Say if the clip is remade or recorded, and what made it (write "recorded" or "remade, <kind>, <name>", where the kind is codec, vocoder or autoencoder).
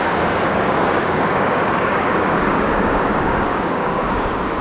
remade, codec, DAC